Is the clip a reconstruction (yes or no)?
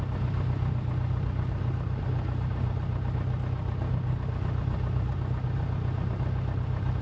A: no